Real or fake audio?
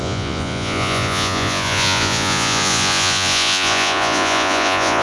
fake